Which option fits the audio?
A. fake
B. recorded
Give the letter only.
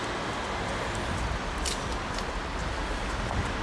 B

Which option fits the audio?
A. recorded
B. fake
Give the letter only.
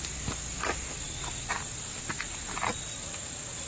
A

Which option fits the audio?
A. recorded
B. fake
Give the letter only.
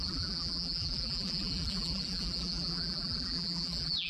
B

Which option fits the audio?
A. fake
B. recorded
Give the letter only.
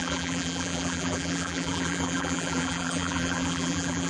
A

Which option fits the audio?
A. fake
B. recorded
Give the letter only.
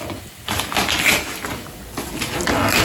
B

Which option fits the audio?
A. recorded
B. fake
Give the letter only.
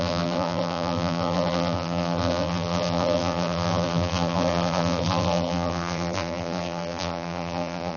B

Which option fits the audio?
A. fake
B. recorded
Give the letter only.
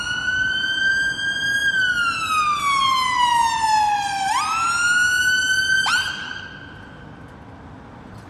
B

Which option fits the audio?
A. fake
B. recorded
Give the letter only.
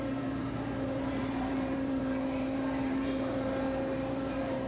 A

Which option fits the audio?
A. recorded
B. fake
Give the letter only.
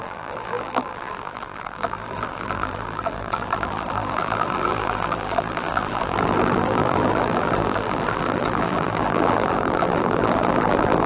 B